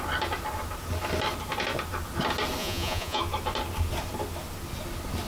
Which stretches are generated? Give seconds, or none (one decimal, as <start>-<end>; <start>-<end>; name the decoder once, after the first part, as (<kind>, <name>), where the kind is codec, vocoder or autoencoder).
2.6-3.2 (vocoder, Vocos)